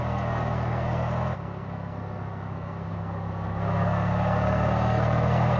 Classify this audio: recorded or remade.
remade